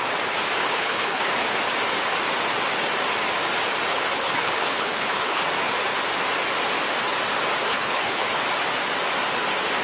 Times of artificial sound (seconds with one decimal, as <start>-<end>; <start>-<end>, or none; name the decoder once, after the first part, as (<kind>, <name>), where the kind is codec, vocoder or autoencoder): 0.6-1.3 (codec, HILCodec); 3.9-5.4; 7.7-8.4